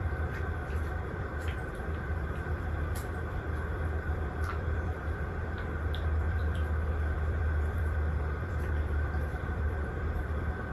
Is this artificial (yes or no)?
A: yes